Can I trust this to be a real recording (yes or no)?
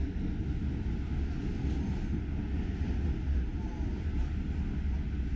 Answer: yes